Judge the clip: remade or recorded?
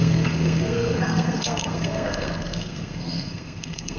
remade